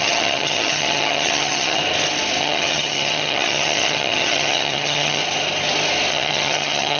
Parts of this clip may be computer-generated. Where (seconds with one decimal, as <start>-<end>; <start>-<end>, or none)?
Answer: 0.0-1.8; 2.4-5.2; 6.1-7.0